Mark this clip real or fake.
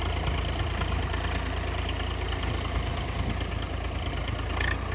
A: real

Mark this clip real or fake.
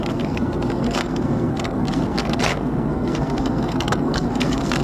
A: fake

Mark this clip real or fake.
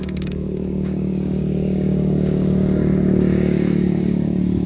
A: fake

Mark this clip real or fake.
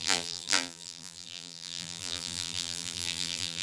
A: fake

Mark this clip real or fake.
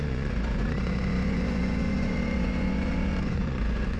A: fake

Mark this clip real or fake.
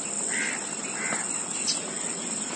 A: real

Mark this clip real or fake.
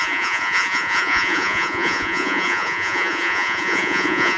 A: fake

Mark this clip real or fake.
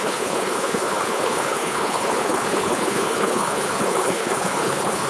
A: fake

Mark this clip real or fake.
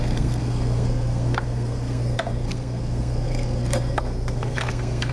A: fake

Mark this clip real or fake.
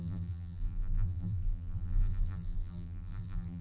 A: fake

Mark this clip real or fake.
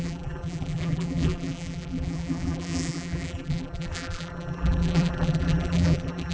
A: fake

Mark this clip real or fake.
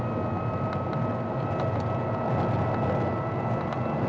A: real